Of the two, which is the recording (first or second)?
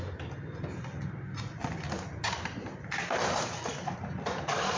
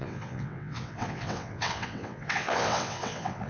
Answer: first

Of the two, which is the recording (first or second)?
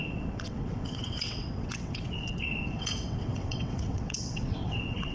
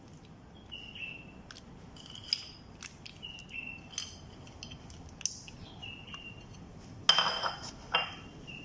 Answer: second